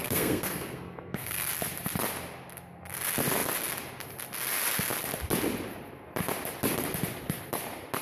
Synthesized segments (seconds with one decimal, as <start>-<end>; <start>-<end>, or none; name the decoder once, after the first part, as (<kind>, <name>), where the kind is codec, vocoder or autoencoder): 0.0-1.5 (codec, SNAC)